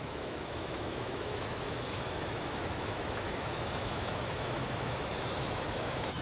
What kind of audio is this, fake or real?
fake